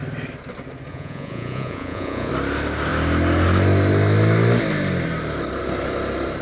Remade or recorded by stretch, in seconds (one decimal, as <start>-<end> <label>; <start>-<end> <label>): 0.0-0.9 recorded; 0.9-2.3 remade; 2.3-6.4 recorded